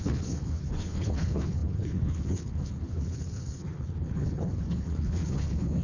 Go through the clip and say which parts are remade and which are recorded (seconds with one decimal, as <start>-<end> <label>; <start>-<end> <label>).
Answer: 0.0-5.8 remade